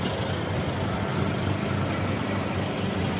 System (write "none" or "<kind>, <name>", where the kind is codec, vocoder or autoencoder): none